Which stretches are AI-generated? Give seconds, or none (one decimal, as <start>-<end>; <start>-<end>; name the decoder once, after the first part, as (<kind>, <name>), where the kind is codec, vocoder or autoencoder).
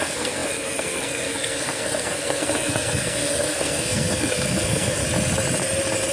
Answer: 0.0-5.0 (codec, SNAC)